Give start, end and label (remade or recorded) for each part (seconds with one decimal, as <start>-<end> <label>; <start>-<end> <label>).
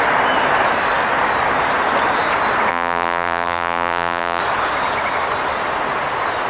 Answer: 0.0-2.7 recorded; 2.7-4.4 remade; 4.4-6.5 recorded